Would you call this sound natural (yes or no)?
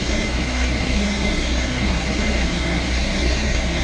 no